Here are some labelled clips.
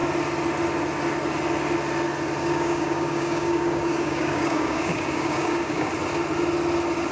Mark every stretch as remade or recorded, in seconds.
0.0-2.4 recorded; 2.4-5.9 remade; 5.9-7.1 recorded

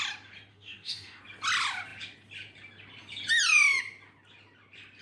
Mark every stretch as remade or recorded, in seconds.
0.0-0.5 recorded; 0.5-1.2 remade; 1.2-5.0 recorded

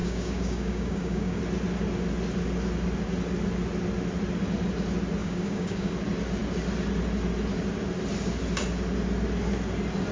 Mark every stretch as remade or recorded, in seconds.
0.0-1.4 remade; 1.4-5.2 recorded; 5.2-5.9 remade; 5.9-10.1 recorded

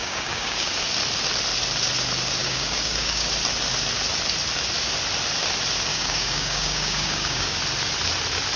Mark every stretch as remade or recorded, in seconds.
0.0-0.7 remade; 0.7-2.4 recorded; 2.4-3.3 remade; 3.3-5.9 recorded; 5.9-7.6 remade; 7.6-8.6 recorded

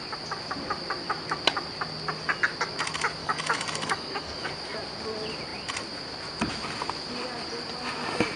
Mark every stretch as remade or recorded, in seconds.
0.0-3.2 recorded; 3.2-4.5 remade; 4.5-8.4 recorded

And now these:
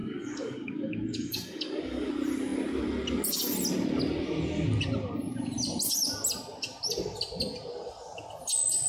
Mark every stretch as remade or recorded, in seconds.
0.0-2.1 remade; 2.1-8.9 recorded

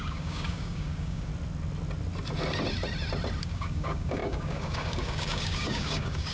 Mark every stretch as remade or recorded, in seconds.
0.0-1.3 remade; 1.3-3.4 recorded; 3.4-6.3 remade